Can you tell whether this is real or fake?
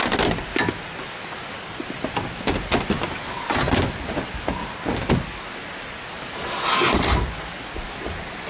real